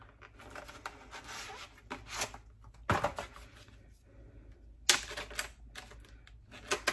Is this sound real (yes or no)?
yes